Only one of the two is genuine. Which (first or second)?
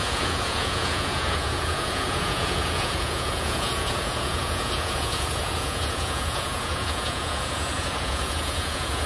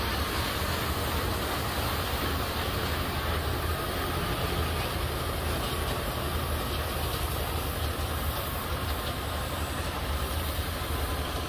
second